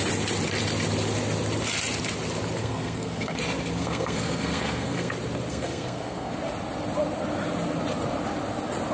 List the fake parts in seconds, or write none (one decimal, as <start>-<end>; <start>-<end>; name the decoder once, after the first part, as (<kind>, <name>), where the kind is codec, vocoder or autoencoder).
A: 2.6-3.4 (codec, SNAC); 3.8-5.1; 5.5-6.3